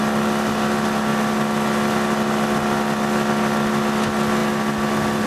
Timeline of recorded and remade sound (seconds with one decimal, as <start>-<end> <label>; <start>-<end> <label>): 0.0-5.3 recorded